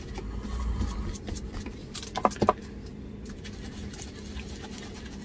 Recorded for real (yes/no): yes